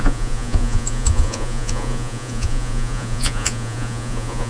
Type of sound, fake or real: fake